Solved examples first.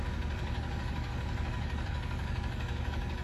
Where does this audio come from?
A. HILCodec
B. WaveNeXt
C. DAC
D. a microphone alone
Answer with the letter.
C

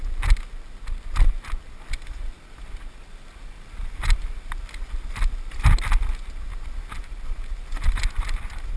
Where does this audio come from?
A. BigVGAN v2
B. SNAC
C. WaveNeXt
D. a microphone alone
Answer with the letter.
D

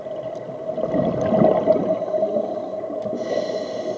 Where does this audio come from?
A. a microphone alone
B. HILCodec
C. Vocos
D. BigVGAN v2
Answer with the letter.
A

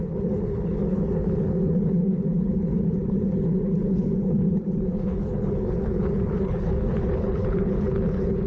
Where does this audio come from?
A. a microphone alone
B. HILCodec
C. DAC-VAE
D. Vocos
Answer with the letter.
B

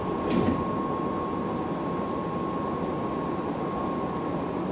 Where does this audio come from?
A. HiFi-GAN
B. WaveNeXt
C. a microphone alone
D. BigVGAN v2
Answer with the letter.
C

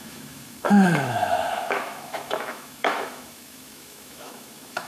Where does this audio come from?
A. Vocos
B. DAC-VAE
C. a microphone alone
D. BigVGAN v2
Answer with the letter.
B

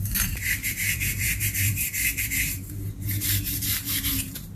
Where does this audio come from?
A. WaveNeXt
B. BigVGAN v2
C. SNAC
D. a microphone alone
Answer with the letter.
B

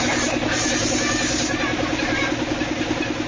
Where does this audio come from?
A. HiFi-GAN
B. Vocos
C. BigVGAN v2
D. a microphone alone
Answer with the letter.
D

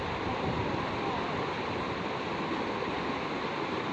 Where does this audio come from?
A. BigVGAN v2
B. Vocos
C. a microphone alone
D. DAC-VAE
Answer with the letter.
C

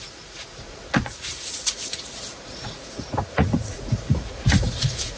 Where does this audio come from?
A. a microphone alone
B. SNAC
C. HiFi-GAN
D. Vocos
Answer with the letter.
D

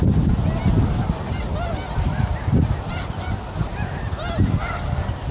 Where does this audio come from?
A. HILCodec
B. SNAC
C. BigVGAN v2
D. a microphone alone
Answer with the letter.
D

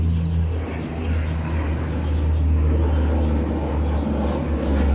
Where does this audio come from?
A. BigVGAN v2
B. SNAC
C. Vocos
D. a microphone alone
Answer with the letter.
D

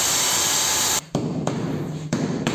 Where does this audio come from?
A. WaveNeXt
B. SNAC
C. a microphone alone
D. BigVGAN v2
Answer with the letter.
D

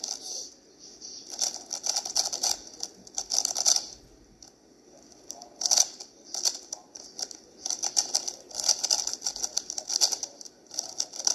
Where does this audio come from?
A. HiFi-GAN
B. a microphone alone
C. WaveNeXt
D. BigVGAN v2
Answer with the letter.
B